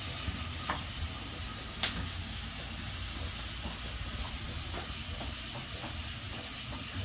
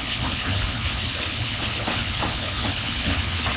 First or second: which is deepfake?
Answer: second